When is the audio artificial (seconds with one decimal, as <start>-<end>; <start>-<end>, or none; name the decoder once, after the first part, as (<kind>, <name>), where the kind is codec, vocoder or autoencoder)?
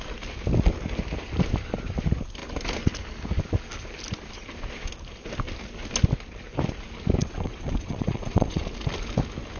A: 7.2-8.6 (vocoder, WaveNeXt)